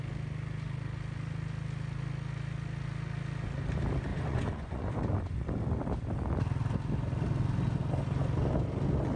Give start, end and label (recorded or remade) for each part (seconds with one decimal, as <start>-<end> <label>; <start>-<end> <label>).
0.0-4.1 recorded; 4.1-4.9 remade; 4.9-9.2 recorded